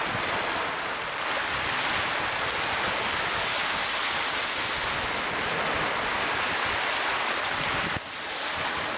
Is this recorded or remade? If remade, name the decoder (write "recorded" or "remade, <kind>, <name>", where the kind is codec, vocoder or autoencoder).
recorded